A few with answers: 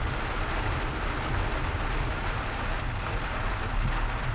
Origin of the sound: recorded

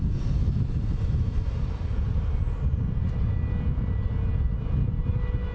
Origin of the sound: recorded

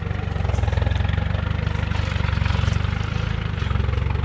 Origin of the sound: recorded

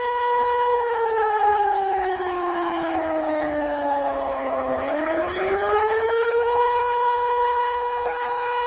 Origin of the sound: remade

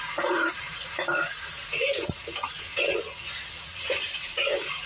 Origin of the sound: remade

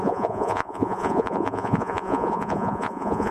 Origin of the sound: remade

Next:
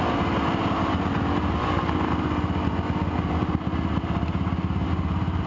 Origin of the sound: recorded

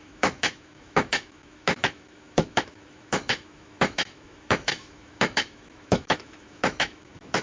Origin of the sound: remade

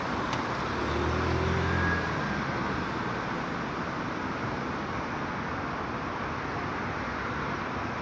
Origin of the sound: recorded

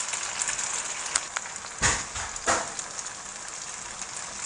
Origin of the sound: recorded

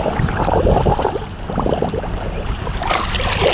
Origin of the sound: recorded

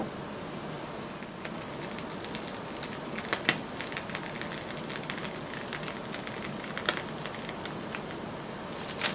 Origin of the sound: recorded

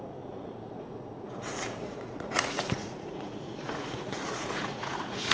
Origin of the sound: remade